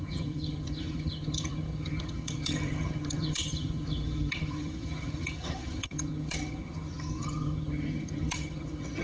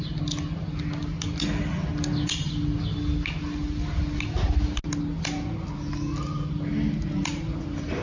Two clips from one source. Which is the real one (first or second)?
second